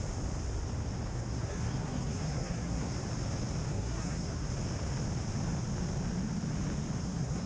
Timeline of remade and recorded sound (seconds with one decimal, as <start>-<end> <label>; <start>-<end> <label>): 0.0-1.1 recorded; 1.1-2.9 remade; 2.9-3.7 recorded; 3.7-4.5 remade; 4.5-7.0 recorded; 7.0-7.5 remade